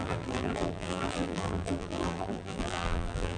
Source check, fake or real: fake